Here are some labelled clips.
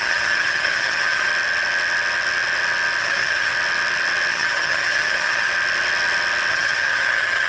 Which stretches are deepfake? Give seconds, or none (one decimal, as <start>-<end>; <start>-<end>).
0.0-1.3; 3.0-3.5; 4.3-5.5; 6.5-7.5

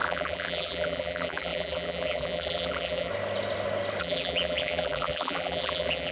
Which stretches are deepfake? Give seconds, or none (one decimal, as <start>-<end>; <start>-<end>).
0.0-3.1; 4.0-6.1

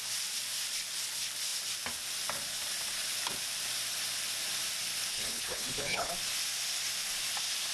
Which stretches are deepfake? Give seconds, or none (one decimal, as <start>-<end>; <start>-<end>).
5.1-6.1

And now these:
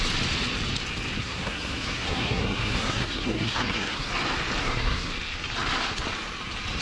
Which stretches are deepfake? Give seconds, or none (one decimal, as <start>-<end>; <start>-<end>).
1.2-4.1; 4.6-5.1

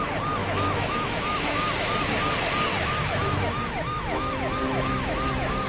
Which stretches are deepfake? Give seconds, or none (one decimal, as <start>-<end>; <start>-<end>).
0.4-2.2; 2.7-5.7